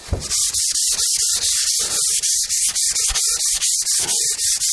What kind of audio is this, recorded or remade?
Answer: recorded